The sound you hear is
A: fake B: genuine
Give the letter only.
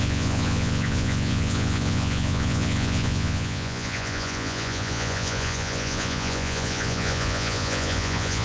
A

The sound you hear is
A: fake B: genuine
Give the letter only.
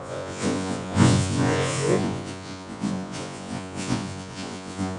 A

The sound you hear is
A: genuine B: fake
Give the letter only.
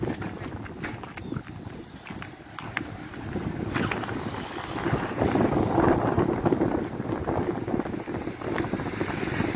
A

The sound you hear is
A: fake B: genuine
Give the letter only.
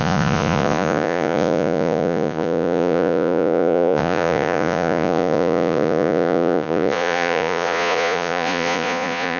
A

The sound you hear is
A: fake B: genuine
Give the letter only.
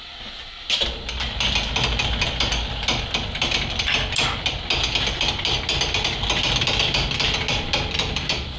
B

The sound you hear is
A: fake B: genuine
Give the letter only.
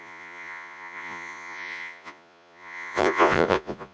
A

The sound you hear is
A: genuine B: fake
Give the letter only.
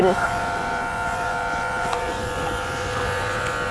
B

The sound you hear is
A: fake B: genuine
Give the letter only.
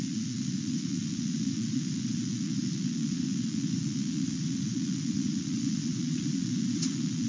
A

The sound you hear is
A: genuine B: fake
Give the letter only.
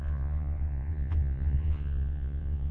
B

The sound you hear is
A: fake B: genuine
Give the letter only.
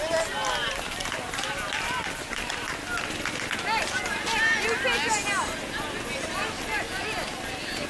B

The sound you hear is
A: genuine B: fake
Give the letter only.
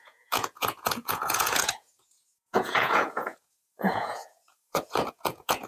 B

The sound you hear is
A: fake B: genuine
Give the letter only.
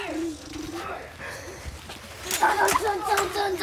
B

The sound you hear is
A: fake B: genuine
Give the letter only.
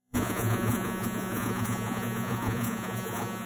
A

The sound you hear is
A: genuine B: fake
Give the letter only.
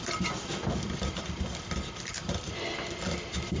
A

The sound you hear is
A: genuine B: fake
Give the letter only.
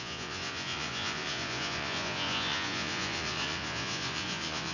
B